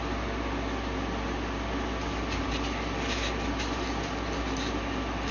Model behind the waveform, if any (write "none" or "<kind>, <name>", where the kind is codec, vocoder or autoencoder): none